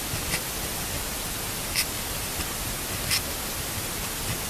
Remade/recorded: recorded